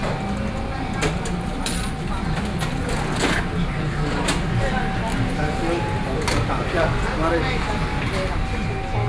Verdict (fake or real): real